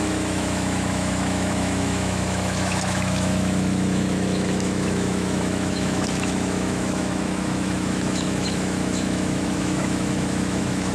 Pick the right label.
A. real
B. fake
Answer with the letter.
B